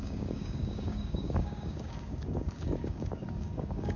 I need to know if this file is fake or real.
fake